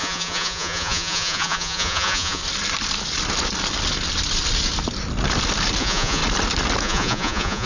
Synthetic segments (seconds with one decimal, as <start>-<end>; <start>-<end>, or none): 0.0-2.4; 5.8-6.2; 6.8-7.7